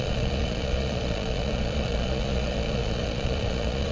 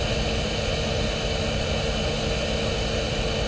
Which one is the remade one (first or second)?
first